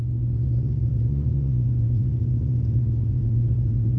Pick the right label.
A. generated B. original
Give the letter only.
A